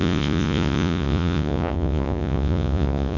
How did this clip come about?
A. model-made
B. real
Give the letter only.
A